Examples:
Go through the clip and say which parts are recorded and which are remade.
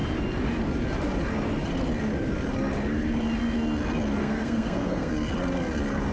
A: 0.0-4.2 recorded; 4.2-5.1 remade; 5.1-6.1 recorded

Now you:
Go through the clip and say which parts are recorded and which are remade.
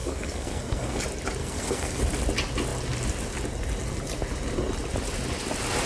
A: 0.0-1.0 remade; 1.0-1.4 recorded; 1.4-2.0 remade; 2.0-5.9 recorded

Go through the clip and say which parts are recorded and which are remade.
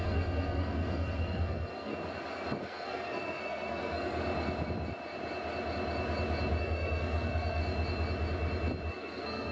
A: 0.0-1.9 remade; 1.9-2.6 recorded; 2.6-4.2 remade; 4.2-6.6 recorded; 6.6-7.6 remade; 7.6-8.9 recorded; 8.9-9.5 remade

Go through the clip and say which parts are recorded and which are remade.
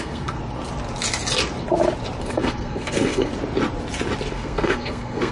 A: 0.0-0.4 remade; 0.4-2.2 recorded; 2.2-3.3 remade; 3.3-4.3 recorded; 4.3-5.3 remade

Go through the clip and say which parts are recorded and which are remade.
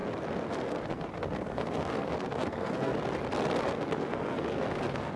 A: 0.0-0.5 recorded; 0.5-2.9 remade; 2.9-3.6 recorded; 3.6-5.2 remade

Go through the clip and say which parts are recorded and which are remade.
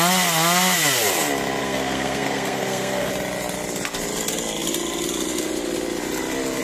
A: 0.0-1.6 recorded; 1.6-3.1 remade; 3.1-6.6 recorded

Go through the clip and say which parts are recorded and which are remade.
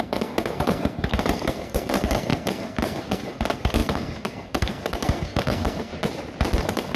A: 0.0-5.9 remade; 5.9-6.6 recorded; 6.6-7.0 remade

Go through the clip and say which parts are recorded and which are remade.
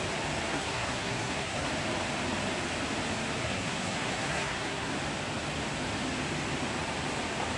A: 0.0-0.5 recorded; 0.5-1.7 remade; 1.7-3.4 recorded; 3.4-5.0 remade; 5.0-7.6 recorded